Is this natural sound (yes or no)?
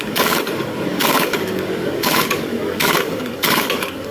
no